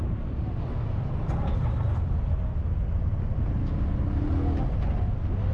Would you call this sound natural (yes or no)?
yes